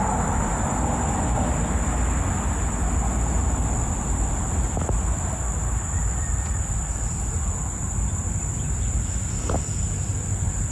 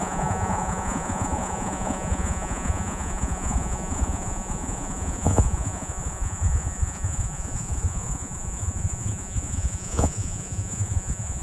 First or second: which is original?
first